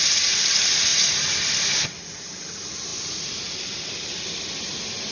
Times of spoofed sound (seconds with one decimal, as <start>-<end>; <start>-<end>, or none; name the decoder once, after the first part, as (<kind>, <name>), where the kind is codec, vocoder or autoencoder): none